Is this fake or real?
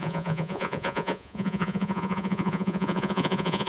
fake